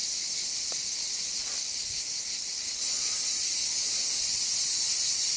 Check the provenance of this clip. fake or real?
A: real